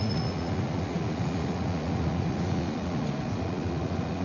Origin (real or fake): fake